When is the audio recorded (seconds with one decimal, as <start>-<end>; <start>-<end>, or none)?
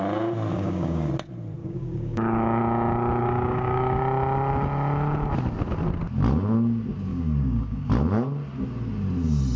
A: 0.0-0.5; 1.1-1.6; 2.6-3.2; 4.0-7.1; 7.9-9.6